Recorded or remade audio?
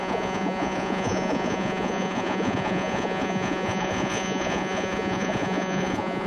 remade